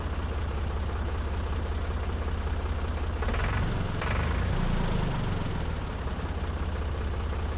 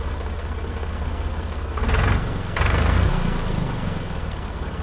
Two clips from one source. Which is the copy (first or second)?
second